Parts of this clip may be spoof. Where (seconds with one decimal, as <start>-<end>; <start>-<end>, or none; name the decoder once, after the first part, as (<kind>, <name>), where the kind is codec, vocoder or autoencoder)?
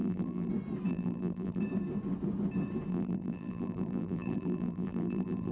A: 0.0-0.5 (vocoder, BigVGAN v2); 0.9-1.6; 2.9-5.5